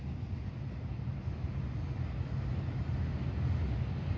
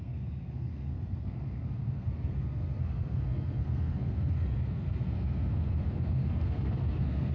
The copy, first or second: second